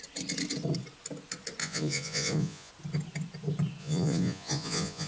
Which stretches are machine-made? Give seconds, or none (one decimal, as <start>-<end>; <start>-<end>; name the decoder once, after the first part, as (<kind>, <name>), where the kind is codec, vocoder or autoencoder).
1.6-2.7 (vocoder, Vocos); 3.8-5.1